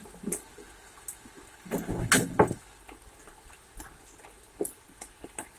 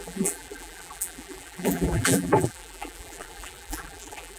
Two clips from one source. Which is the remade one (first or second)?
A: second